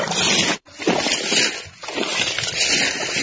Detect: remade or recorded recorded